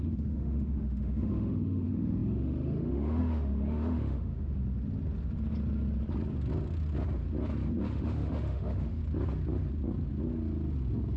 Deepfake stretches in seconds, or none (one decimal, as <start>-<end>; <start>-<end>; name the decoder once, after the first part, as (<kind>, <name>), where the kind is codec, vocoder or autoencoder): 0.0-4.6 (autoencoder, DAC-VAE); 7.9-9.0